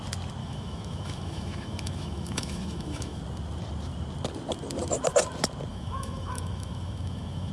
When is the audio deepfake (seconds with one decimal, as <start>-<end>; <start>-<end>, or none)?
0.4-3.2; 5.7-7.5